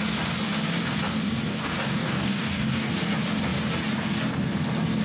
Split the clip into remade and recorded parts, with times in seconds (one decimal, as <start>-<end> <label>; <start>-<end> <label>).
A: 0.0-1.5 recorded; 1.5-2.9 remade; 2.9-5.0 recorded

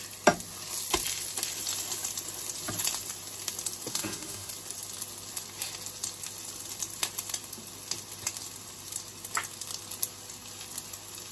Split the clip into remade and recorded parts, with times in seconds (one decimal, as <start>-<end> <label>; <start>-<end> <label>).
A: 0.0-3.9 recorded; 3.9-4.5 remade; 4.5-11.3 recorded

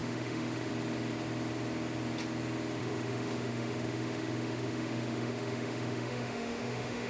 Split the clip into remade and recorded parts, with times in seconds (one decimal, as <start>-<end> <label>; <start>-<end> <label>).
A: 0.0-0.7 remade; 0.7-2.8 recorded; 2.8-7.1 remade